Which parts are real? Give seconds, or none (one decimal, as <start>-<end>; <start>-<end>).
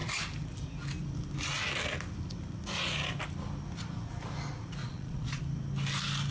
0.0-4.8; 5.4-6.3